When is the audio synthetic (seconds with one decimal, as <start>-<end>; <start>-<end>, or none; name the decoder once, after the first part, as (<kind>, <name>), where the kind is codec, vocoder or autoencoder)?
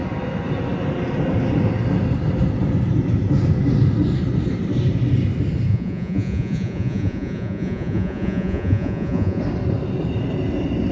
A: 5.7-9.4 (vocoder, Vocos)